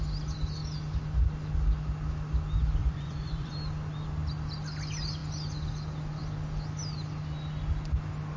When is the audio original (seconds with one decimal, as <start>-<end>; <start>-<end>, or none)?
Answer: 0.0-2.8; 3.5-8.4